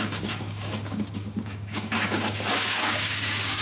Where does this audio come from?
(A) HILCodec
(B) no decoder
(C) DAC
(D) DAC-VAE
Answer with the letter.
C